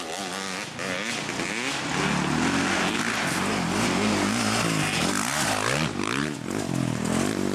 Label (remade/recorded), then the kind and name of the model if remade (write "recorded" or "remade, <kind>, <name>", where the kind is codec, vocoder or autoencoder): recorded